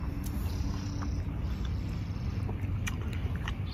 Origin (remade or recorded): recorded